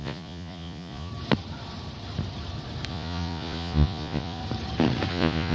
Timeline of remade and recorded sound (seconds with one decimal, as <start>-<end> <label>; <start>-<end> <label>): 0.0-1.1 remade; 1.1-2.9 recorded; 2.9-4.4 remade; 4.4-5.1 recorded; 5.1-5.5 remade